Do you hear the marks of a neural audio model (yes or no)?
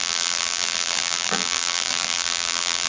yes